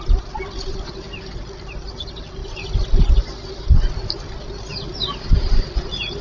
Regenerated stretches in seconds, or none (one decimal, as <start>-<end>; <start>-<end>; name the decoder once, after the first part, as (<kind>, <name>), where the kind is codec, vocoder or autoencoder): none